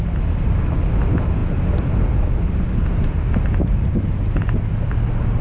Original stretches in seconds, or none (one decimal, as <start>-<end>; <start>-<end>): 0.0-5.4

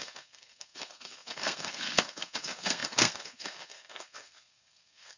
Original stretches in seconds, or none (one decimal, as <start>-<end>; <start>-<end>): none

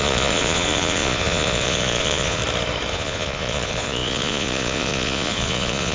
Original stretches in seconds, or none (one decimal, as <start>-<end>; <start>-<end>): 2.4-2.9

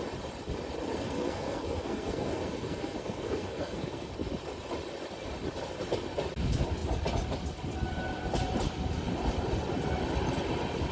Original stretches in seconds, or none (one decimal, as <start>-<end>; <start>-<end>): 0.0-0.9; 4.1-10.9